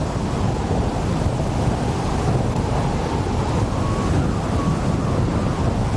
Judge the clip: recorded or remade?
recorded